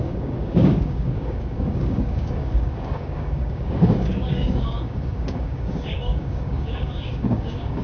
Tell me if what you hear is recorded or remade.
remade